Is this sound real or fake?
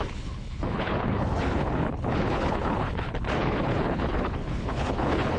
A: fake